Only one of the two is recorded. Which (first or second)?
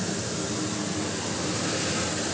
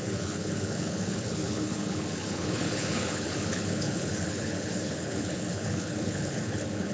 first